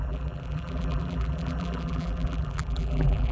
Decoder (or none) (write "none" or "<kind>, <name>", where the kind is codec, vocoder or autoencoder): vocoder, BigVGAN v2